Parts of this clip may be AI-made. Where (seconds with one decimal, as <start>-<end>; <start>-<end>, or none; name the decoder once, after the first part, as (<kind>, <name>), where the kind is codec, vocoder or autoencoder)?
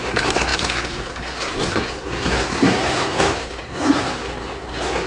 0.0-5.1 (codec, SNAC)